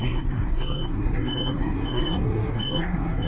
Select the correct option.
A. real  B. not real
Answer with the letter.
B